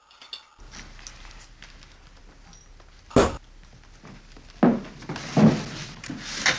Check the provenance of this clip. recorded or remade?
recorded